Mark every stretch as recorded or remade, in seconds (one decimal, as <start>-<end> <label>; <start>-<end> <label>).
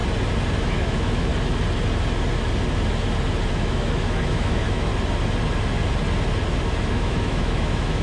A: 0.0-0.6 recorded; 0.6-1.3 remade; 1.3-3.5 recorded; 3.5-4.9 remade; 4.9-6.9 recorded; 6.9-8.0 remade